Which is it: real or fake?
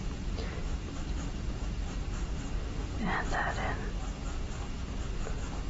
fake